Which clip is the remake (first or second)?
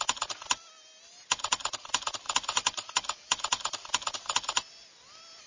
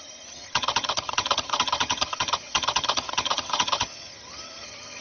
second